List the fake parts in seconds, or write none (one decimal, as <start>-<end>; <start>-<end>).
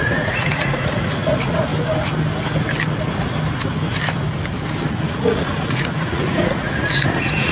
0.0-1.7; 4.9-7.5